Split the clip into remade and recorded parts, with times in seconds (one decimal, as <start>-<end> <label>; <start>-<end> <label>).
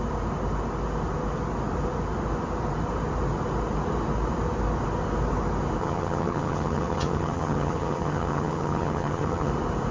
0.0-5.8 recorded; 5.8-9.5 remade; 9.5-9.9 recorded